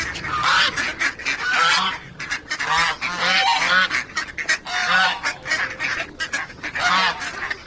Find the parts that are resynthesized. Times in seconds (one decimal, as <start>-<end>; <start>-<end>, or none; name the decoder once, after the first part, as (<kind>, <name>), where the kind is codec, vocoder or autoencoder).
none